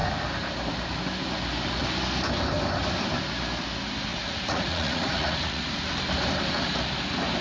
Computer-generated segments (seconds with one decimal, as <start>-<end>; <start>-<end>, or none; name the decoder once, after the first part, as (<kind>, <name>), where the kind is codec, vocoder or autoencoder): 4.1-5.9 (vocoder, Vocos)